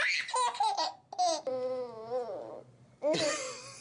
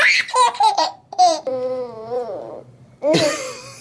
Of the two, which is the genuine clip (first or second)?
first